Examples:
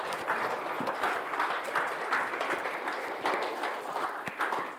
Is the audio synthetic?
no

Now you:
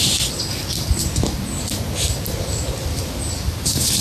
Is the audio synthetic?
no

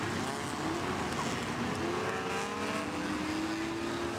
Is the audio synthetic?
no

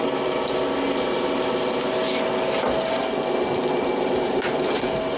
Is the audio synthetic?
no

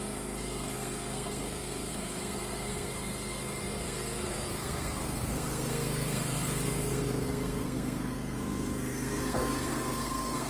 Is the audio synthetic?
yes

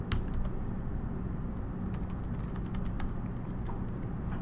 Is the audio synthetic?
no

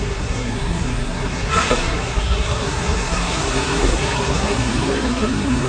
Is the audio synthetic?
yes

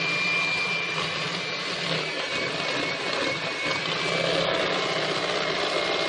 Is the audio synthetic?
no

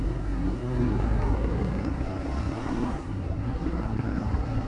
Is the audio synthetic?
yes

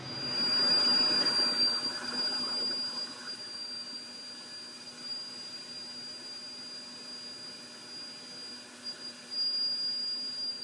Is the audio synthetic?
no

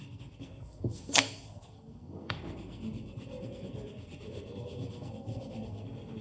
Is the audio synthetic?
yes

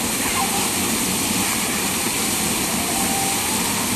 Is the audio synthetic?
no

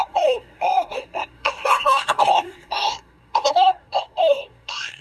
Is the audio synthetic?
yes